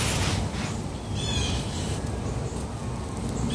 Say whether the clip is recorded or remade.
recorded